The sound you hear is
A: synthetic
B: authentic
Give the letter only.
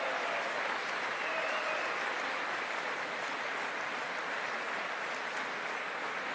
B